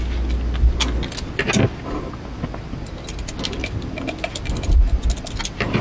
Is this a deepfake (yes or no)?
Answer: no